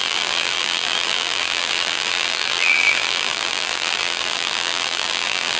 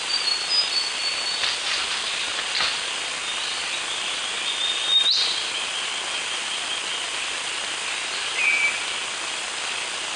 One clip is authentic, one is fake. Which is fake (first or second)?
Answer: first